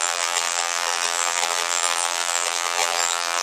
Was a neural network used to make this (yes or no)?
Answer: yes